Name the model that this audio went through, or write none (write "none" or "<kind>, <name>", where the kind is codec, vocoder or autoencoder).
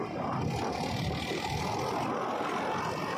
none